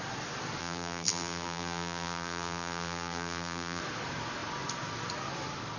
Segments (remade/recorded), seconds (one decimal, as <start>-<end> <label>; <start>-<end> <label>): 0.0-0.6 recorded; 0.6-3.8 remade; 3.8-5.8 recorded